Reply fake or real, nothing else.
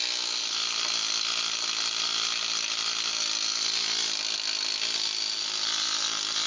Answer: real